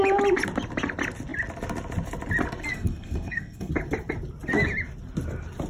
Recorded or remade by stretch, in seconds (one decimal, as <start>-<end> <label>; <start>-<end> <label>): 0.0-2.7 recorded; 2.7-3.7 remade; 3.7-5.7 recorded